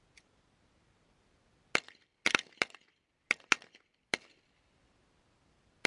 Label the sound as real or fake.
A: real